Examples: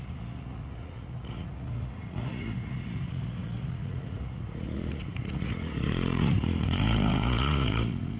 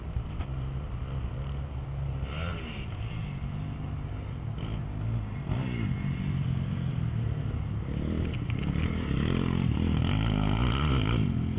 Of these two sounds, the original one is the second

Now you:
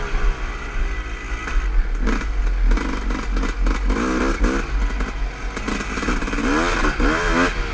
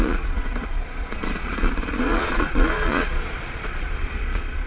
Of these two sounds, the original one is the first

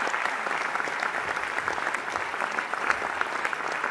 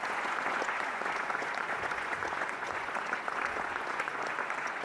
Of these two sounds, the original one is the first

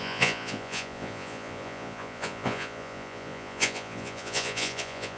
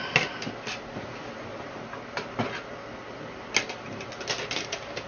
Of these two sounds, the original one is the second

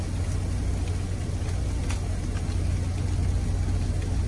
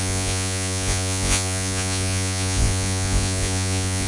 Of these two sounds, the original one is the first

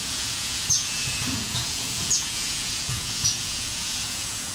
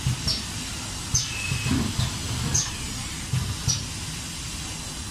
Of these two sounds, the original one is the second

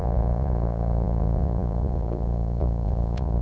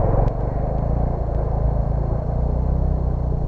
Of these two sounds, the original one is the second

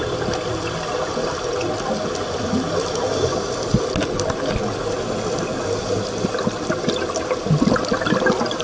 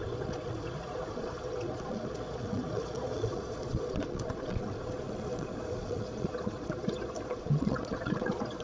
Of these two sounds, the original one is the first